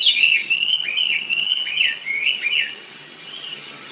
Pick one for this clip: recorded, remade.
remade